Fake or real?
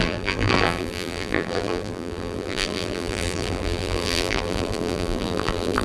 fake